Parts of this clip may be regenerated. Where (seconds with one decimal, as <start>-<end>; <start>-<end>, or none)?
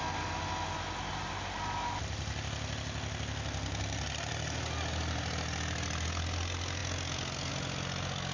none